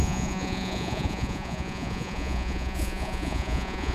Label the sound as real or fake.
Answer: fake